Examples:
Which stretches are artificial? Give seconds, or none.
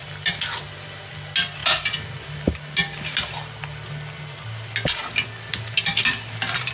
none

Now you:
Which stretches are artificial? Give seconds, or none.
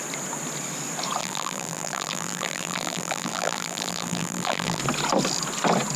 1.2-4.8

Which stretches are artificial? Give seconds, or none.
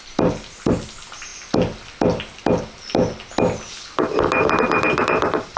none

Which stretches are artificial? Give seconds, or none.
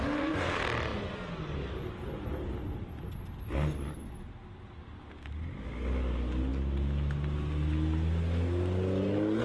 none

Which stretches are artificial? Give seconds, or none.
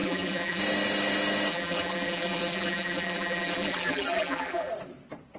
0.0-0.6; 1.5-4.7